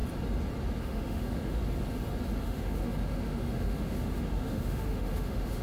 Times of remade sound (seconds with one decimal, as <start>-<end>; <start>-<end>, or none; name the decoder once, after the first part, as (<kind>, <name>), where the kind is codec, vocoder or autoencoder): 0.8-1.6 (autoencoder, DAC-VAE); 2.4-5.6